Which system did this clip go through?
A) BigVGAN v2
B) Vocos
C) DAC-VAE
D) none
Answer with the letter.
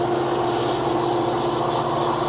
D